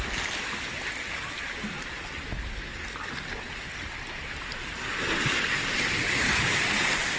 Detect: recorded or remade recorded